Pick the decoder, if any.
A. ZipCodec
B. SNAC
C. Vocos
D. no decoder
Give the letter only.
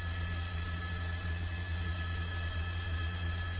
C